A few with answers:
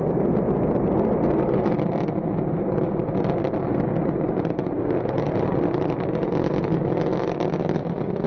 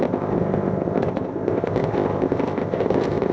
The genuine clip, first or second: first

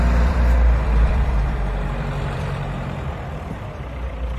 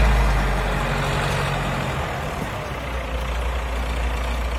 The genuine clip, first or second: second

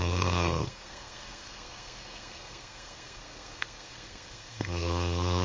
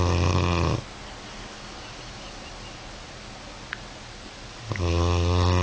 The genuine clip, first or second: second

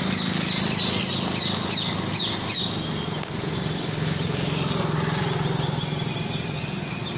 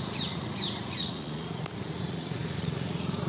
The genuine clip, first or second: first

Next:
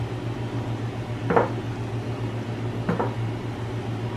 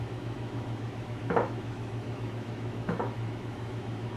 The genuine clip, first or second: first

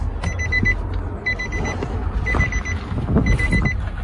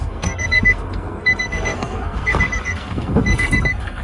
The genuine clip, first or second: first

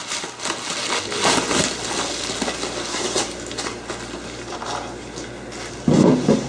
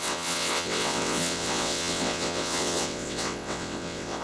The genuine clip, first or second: first